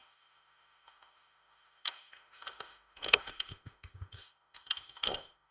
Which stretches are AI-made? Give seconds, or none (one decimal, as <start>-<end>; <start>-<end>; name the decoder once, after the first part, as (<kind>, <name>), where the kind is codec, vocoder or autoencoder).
0.0-5.5 (autoencoder, DAC-VAE)